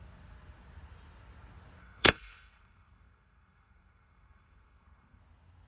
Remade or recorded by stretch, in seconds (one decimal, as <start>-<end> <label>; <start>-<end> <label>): 0.0-1.8 recorded; 1.8-5.2 remade; 5.2-5.7 recorded